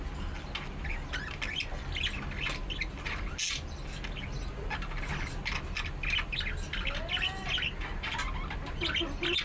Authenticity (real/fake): real